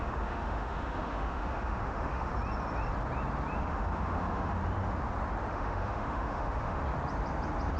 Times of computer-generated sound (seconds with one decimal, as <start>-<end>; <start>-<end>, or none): 0.0-2.3; 3.6-4.6; 5.5-6.8